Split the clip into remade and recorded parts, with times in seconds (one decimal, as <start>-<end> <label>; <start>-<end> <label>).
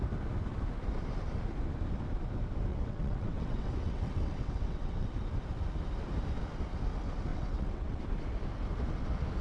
0.0-2.7 recorded; 2.7-5.1 remade; 5.1-7.3 recorded; 7.3-8.0 remade; 8.0-9.4 recorded